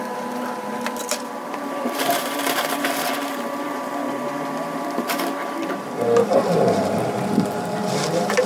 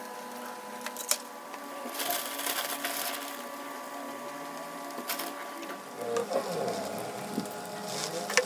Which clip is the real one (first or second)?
second